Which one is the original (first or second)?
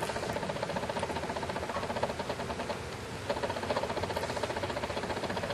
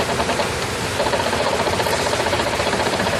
first